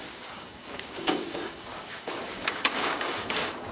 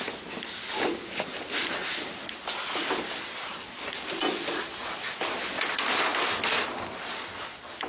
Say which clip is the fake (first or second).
first